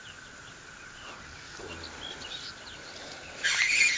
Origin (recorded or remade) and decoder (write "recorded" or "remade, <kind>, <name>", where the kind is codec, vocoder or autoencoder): recorded